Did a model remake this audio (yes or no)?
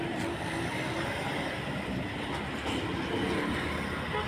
no